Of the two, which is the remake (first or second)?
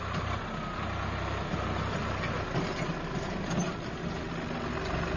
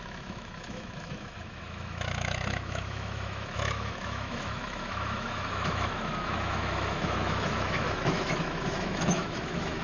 second